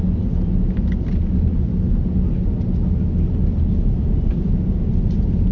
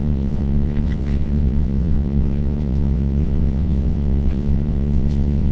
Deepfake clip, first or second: second